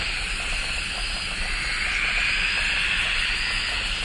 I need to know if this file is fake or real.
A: real